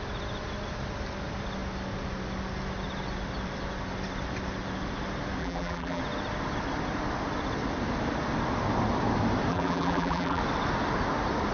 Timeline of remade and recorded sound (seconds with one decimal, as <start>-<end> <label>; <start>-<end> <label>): 0.0-5.4 recorded; 5.4-6.0 remade; 6.0-9.5 recorded; 9.5-10.4 remade; 10.4-11.5 recorded